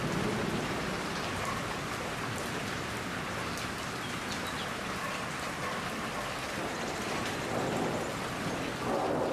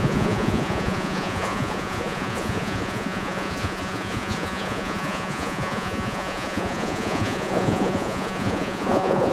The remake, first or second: second